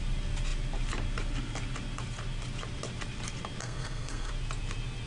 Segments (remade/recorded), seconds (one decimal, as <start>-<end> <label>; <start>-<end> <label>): 0.0-3.6 recorded; 3.6-4.3 remade; 4.3-5.1 recorded